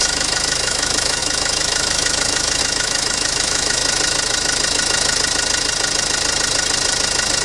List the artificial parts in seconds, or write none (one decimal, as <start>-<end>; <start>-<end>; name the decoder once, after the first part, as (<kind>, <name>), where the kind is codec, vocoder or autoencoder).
0.0-3.8 (autoencoder, DAC-VAE)